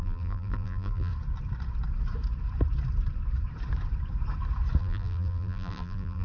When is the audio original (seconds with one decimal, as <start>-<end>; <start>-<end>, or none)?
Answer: 1.1-4.8